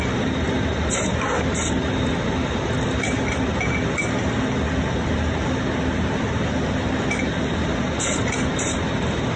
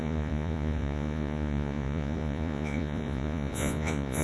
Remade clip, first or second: second